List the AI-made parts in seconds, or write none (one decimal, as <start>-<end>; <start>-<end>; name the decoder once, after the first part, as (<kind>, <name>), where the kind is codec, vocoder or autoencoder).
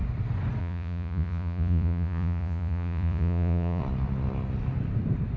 0.6-3.8 (vocoder, Vocos)